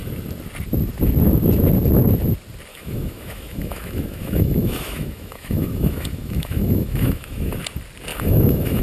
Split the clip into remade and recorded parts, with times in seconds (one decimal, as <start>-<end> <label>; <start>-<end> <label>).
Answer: 0.0-2.7 recorded; 2.7-7.5 remade; 7.5-8.1 recorded; 8.1-8.8 remade